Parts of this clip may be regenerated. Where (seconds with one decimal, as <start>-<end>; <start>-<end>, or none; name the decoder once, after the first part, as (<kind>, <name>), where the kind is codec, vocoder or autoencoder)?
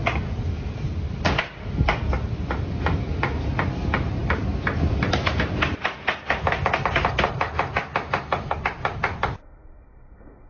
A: none